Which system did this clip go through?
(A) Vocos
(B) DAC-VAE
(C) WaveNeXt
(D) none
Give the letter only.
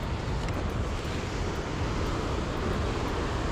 D